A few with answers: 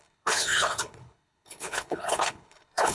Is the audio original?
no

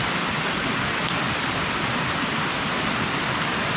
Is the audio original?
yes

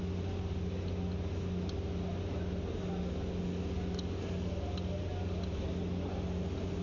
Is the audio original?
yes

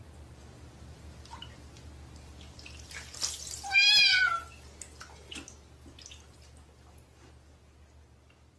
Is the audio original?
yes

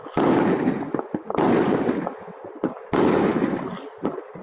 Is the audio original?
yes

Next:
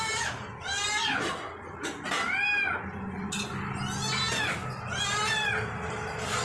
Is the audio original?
yes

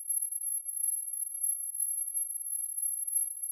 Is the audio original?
no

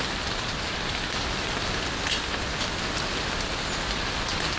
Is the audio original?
yes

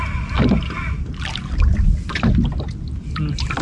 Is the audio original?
yes